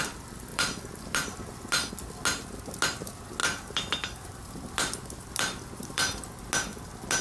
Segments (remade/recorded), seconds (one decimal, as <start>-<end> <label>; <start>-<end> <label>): 0.0-0.5 recorded; 0.5-1.9 remade; 1.9-3.4 recorded; 3.4-6.3 remade; 6.3-7.2 recorded